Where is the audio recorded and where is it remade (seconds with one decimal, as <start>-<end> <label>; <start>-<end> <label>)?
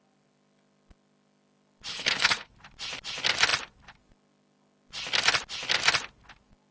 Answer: 0.0-1.9 recorded; 1.9-2.5 remade; 2.5-6.7 recorded